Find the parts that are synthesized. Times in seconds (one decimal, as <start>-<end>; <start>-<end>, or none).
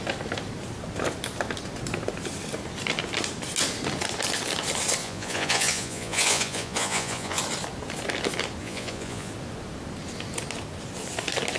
5.0-7.4; 8.6-9.3